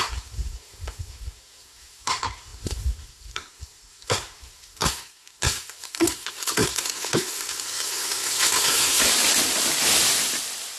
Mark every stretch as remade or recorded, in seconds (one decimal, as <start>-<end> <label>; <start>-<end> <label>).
0.0-9.0 remade; 9.0-10.8 recorded